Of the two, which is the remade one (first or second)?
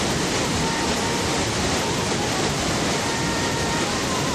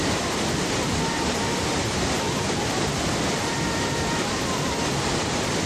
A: second